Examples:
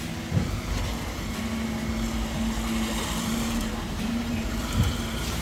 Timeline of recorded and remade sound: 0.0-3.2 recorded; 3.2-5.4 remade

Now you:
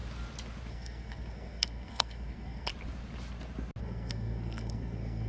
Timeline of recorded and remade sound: 0.0-0.7 recorded; 0.7-2.7 remade; 2.7-3.8 recorded; 3.8-5.3 remade

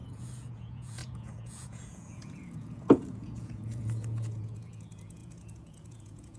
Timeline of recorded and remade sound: 0.0-6.4 remade

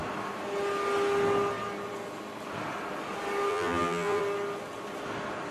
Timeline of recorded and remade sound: 0.0-3.5 recorded; 3.5-4.2 remade; 4.2-5.5 recorded

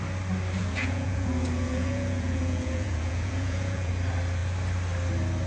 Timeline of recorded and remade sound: 0.0-0.6 recorded; 0.6-3.9 remade; 3.9-5.5 recorded